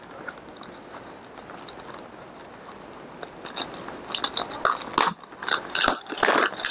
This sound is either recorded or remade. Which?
recorded